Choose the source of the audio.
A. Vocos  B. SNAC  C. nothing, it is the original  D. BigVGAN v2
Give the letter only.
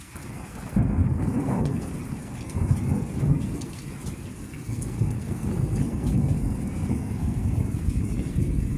B